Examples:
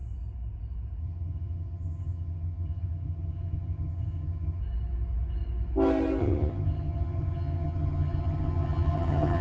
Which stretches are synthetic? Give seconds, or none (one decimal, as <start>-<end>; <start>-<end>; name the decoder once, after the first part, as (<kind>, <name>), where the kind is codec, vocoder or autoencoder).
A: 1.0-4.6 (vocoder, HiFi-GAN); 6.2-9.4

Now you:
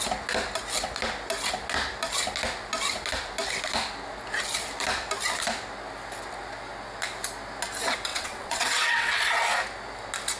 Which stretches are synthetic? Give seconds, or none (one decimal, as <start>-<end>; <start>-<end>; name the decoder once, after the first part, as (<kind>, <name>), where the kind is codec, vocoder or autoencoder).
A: 8.1-9.1 (vocoder, WaveNeXt)

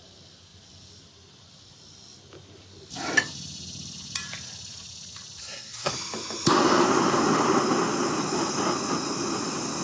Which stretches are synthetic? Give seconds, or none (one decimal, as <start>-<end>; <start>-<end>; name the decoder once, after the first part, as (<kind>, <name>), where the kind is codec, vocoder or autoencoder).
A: 5.4-5.9 (codec, SNAC)

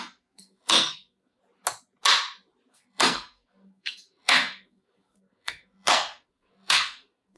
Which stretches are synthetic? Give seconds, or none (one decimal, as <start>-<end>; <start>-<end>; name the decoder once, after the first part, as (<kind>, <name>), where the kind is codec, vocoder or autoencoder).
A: 0.0-1.4 (codec, SNAC); 2.7-7.4

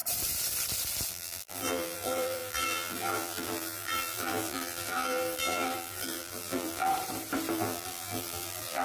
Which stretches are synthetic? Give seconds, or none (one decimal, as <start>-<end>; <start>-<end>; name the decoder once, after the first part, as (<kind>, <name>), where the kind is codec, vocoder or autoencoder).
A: 1.1-6.9 (vocoder, BigVGAN v2); 7.5-8.8

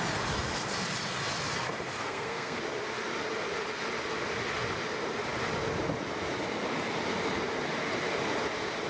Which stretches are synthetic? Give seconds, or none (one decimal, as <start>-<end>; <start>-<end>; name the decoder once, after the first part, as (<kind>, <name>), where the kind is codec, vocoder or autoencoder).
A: 2.0-2.6 (codec, SNAC)

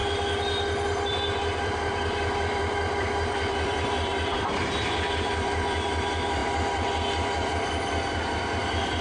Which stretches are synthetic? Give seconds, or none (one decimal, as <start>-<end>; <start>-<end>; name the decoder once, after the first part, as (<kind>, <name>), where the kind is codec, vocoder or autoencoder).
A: 1.1-9.0 (vocoder, BigVGAN v2)

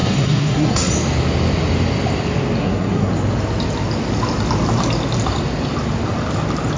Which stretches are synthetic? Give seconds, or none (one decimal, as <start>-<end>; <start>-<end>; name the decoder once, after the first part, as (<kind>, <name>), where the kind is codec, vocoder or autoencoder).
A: 0.0-0.9 (codec, SNAC); 2.6-3.1